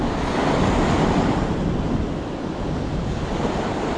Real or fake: real